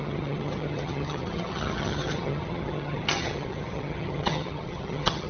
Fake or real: fake